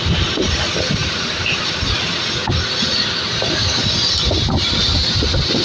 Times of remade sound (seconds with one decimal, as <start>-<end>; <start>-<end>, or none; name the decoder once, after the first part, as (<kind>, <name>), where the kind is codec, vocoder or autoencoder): 1.0-1.9 (vocoder, BigVGAN v2); 2.9-3.6